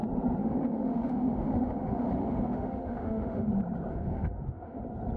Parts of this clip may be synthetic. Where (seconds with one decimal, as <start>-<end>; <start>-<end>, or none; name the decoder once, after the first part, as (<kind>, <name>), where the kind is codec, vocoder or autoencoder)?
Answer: 0.4-3.5 (autoencoder, DAC-VAE); 3.9-4.8